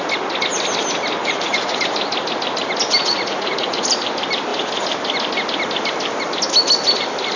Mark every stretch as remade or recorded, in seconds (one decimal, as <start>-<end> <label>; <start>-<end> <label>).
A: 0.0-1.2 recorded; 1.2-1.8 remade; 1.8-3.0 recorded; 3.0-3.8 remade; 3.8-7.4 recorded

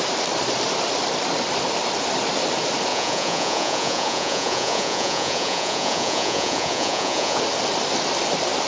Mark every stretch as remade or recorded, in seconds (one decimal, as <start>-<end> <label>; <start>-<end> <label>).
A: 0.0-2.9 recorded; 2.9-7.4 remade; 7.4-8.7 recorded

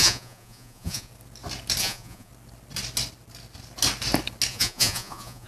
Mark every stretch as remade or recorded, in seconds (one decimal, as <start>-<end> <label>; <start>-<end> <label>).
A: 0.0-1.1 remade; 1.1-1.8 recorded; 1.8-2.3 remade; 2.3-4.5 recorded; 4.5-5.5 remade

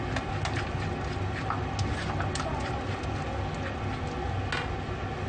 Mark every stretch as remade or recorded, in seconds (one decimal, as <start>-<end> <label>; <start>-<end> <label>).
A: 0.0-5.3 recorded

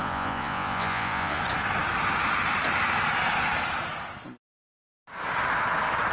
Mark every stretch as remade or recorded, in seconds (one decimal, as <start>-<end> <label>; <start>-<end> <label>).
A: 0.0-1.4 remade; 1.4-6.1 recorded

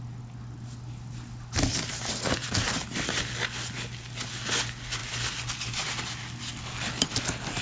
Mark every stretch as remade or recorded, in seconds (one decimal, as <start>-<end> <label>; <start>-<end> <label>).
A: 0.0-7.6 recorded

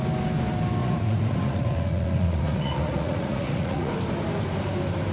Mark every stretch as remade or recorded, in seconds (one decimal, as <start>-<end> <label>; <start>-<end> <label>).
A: 0.0-0.8 recorded; 0.8-3.9 remade; 3.9-5.1 recorded

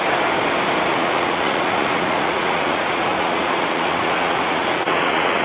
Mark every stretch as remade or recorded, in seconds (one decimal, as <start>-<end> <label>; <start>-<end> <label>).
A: 0.0-0.9 recorded; 0.9-5.4 remade